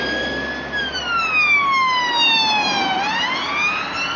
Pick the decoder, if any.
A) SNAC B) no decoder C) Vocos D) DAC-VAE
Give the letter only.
B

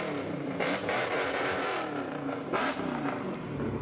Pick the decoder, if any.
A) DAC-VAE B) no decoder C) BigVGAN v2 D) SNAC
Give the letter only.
C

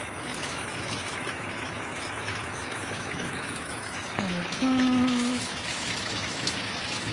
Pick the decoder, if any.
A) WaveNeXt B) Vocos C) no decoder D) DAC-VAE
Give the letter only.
D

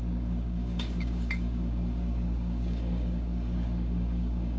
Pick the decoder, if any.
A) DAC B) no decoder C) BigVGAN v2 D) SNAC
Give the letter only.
A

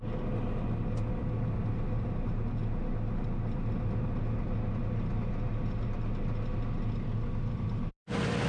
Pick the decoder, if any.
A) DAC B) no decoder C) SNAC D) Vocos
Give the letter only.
B